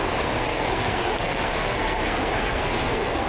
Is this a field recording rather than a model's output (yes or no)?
no